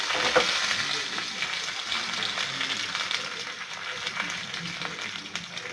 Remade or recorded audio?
recorded